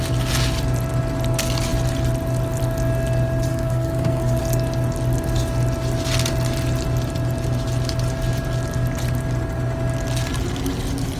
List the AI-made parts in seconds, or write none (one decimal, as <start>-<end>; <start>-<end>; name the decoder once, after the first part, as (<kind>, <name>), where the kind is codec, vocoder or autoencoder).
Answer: 3.5-4.4 (codec, SNAC)